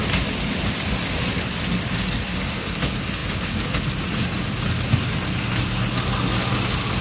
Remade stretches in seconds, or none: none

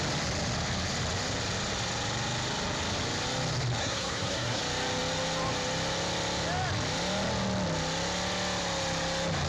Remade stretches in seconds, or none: 3.8-4.6

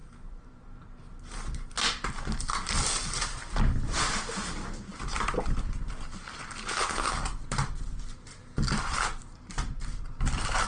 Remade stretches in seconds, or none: 0.0-0.9